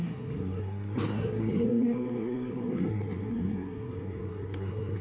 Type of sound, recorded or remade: remade